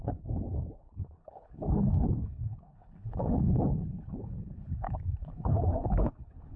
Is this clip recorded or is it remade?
remade